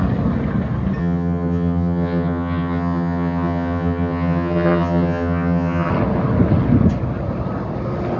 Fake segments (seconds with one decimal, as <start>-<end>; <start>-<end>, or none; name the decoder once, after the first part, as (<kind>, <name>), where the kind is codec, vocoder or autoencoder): 1.0-5.9 (vocoder, HiFi-GAN)